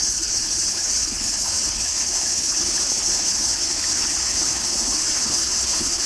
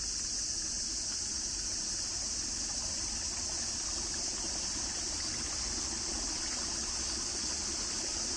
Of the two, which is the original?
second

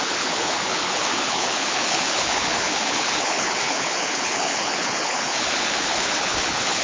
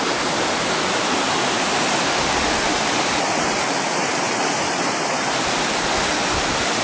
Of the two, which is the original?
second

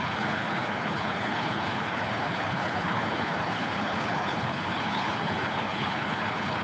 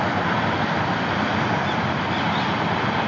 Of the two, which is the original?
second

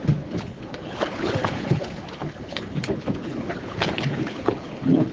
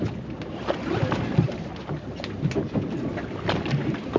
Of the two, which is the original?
second